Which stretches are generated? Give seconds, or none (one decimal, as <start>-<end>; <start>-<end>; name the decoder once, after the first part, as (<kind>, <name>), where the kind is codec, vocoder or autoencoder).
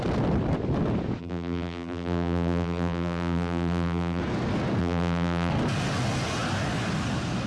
1.2-4.2 (vocoder, BigVGAN v2); 4.8-5.5